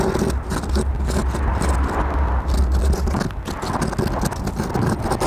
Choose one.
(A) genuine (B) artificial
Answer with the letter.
A